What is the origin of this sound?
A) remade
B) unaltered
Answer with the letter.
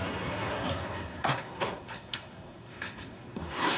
A